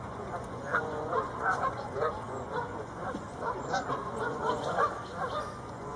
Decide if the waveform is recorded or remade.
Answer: remade